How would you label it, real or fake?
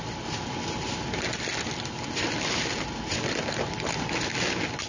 real